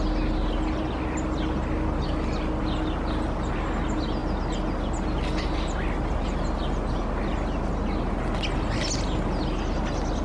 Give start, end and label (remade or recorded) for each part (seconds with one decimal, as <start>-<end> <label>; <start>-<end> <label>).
0.0-10.2 recorded